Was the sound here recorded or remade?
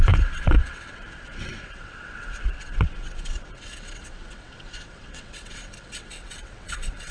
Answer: remade